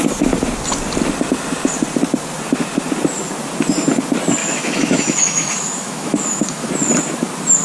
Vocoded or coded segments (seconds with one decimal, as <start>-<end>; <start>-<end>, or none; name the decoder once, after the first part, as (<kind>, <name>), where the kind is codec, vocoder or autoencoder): 4.4-6.7 (autoencoder, DAC-VAE)